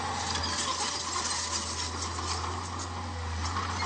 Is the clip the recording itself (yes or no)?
yes